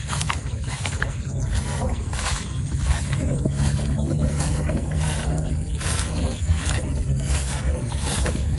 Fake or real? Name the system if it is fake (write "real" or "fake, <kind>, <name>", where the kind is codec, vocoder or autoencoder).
fake, codec, SNAC